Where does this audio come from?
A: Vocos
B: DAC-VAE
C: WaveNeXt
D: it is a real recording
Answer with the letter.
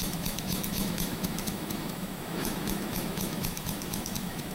B